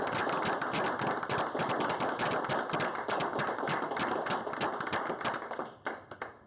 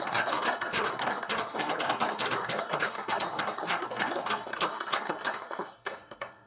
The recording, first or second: first